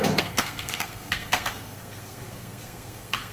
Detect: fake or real fake